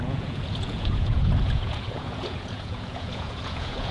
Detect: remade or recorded remade